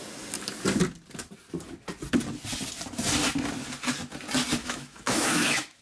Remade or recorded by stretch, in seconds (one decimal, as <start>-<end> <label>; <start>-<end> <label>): 0.0-4.6 recorded; 4.6-5.8 remade